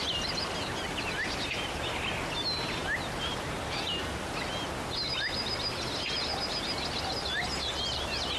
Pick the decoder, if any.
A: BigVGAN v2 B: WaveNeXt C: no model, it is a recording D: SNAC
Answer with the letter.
C